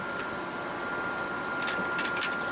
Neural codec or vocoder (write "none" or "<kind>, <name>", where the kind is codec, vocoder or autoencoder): none